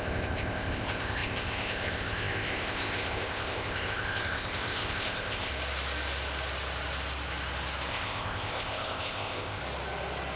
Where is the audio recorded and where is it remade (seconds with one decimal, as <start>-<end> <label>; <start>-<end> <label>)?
0.0-5.5 remade; 5.5-7.9 recorded; 7.9-9.6 remade; 9.6-10.4 recorded